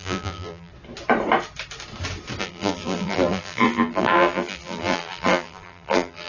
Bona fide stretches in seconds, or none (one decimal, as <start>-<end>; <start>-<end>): 0.7-2.4